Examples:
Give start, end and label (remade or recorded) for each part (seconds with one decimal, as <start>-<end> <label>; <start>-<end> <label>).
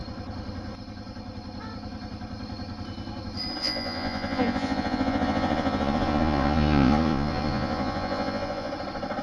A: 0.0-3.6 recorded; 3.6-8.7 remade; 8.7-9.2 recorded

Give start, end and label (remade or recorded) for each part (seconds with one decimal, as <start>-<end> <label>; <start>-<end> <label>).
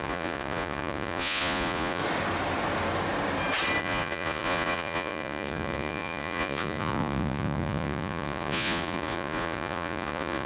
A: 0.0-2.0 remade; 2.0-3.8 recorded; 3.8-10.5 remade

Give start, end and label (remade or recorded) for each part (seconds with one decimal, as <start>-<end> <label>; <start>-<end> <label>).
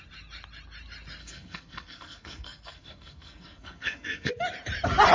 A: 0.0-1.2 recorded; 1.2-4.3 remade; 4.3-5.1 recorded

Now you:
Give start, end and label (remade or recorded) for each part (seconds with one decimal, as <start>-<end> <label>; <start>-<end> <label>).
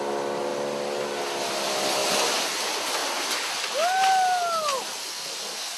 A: 0.0-5.0 recorded; 5.0-5.8 remade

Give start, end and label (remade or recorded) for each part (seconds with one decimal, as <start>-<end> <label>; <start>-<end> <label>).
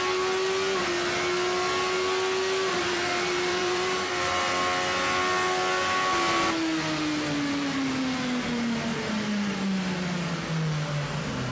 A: 0.0-2.7 recorded; 2.7-4.5 remade; 4.5-8.9 recorded; 8.9-9.5 remade; 9.5-11.5 recorded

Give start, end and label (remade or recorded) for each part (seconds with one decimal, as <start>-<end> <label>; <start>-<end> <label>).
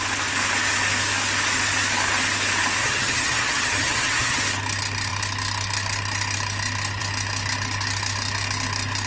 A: 0.0-2.8 recorded; 2.8-4.4 remade; 4.4-9.1 recorded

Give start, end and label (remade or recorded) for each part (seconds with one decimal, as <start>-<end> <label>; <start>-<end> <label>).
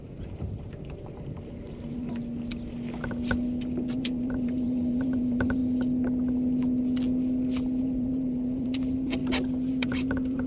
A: 0.0-2.1 remade; 2.1-3.9 recorded; 3.9-5.6 remade; 5.6-7.8 recorded; 7.8-9.2 remade; 9.2-9.7 recorded; 9.7-10.5 remade